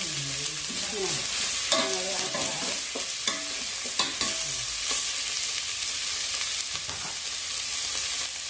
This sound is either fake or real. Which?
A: real